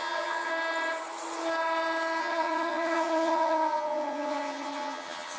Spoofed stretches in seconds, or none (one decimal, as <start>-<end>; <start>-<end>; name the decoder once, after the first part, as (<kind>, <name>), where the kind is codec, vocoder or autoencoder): 0.0-0.5 (vocoder, HiFi-GAN); 2.2-5.4